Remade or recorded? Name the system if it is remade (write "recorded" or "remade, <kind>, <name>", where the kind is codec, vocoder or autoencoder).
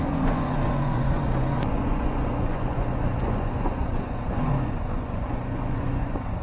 remade, vocoder, Vocos